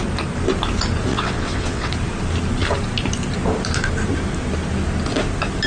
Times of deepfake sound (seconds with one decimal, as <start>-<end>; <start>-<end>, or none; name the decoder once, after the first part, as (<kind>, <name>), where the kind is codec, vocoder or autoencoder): 1.1-1.9 (vocoder, WaveNeXt)